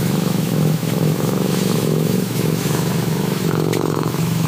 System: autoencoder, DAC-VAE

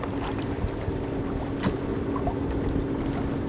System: none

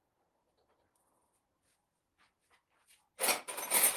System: none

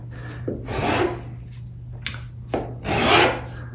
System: none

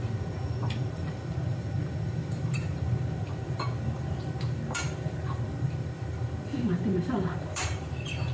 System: vocoder, BigVGAN v2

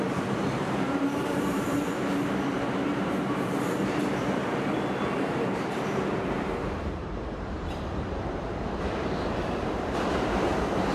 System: vocoder, BigVGAN v2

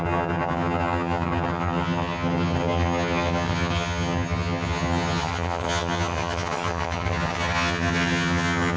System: vocoder, HiFi-GAN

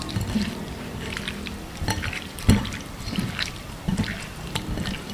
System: vocoder, BigVGAN v2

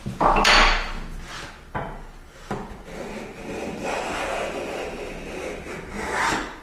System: none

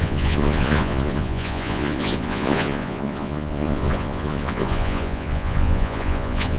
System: vocoder, Vocos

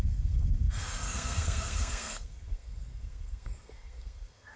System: codec, SNAC